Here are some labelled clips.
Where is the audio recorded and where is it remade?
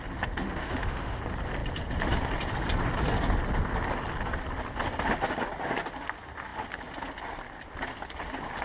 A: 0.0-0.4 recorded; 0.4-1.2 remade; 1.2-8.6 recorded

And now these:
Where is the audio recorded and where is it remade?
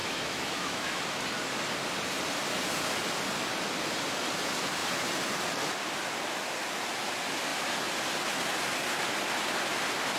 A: 0.0-1.0 remade; 1.0-10.2 recorded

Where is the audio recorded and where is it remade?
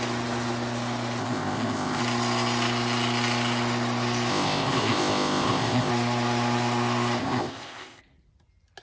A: 0.0-1.2 recorded; 1.2-2.0 remade; 2.0-4.3 recorded; 4.3-5.9 remade; 5.9-7.2 recorded; 7.2-8.0 remade; 8.0-8.8 recorded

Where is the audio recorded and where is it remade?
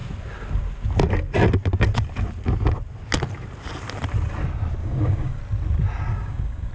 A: 0.0-4.8 recorded; 4.8-5.4 remade; 5.4-6.1 recorded; 6.1-6.7 remade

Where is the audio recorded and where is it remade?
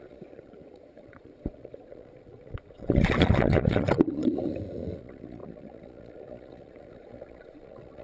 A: 0.0-8.0 remade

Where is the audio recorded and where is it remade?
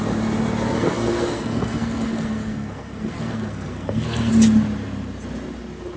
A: 0.0-0.7 recorded; 0.7-4.3 remade; 4.3-6.0 recorded